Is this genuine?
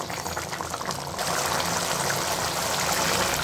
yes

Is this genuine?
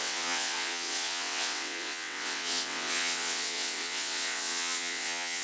no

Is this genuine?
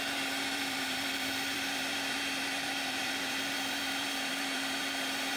no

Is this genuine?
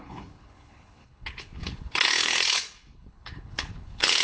no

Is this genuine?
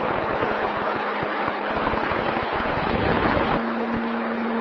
no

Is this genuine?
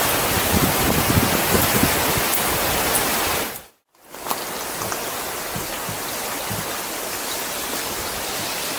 yes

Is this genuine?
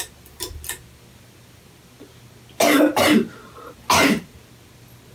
yes